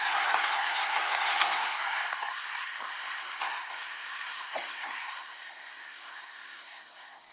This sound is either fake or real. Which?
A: fake